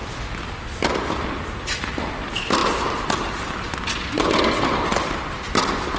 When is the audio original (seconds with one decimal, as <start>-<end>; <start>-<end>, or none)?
2.6-5.0